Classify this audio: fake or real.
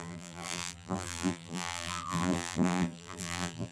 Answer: fake